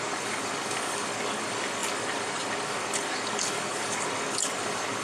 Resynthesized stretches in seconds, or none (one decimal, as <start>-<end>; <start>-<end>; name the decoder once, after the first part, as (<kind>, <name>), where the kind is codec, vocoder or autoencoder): 0.0-5.0 (codec, DAC)